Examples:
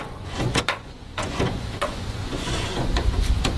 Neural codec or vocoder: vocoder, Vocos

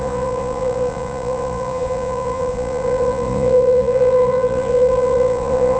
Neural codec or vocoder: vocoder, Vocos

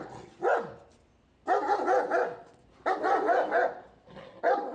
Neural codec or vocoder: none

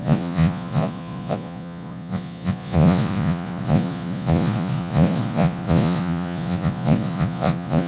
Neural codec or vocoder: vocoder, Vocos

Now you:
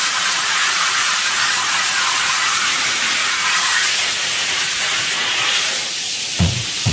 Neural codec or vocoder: vocoder, Vocos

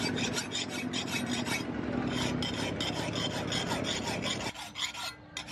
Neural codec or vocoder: none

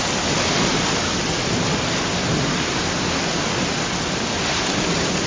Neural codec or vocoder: none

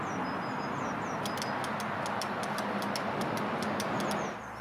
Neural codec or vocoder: none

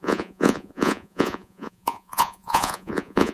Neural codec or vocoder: vocoder, Vocos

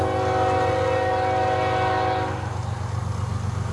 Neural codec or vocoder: none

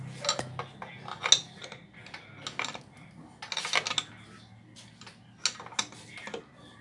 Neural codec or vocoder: none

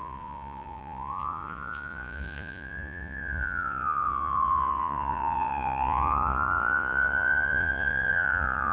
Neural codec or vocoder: vocoder, Vocos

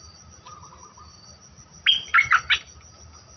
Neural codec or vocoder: none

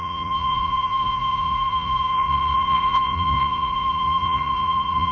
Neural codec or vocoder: vocoder, Vocos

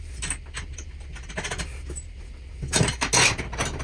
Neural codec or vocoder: none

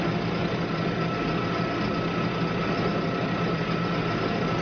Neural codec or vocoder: none